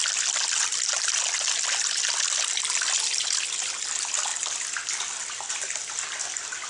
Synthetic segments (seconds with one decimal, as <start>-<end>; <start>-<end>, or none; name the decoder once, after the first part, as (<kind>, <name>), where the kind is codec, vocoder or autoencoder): 0.0-0.9 (vocoder, BigVGAN v2)